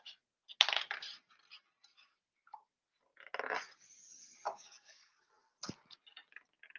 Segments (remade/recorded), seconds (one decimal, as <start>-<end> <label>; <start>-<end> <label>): 0.0-4.5 recorded; 4.5-5.3 remade; 5.3-6.8 recorded